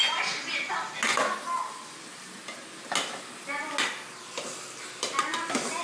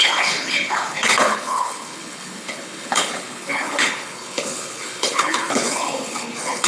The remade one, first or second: second